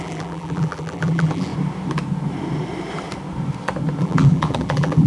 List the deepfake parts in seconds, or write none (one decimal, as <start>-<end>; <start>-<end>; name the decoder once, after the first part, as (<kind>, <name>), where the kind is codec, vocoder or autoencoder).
0.0-1.5 (vocoder, BigVGAN v2); 4.0-5.1